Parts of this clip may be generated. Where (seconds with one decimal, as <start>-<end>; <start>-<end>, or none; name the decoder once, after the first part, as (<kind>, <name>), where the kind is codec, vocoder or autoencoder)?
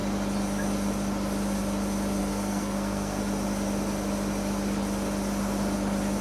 2.2-3.2 (codec, SNAC)